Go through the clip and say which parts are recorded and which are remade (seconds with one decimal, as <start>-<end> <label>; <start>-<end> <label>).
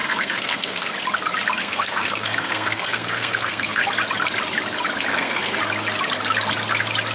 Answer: 0.0-0.9 remade; 0.9-1.6 recorded; 1.6-3.8 remade; 3.8-5.1 recorded; 5.1-5.6 remade; 5.6-7.1 recorded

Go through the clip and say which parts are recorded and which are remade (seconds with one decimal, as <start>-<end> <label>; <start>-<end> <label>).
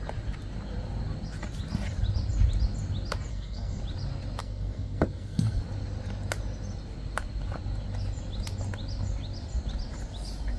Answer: 0.0-3.3 recorded; 3.3-3.8 remade; 3.8-4.4 recorded; 4.4-5.6 remade; 5.6-10.6 recorded